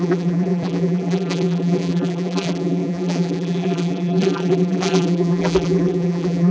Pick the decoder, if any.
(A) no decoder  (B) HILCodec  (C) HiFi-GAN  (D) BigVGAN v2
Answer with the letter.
D